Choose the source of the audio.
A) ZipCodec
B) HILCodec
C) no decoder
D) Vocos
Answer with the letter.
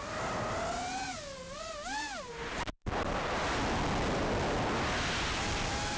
C